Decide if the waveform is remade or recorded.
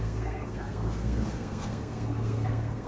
remade